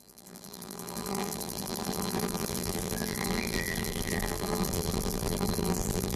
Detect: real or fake fake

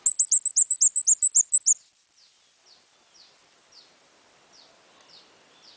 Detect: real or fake real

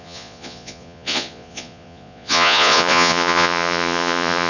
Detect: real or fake fake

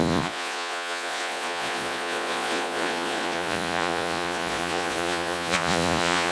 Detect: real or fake fake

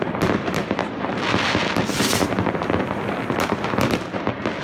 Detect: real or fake fake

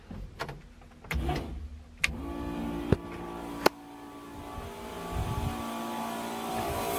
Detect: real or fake real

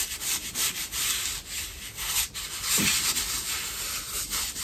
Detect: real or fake real